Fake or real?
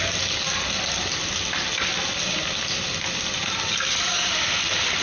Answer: real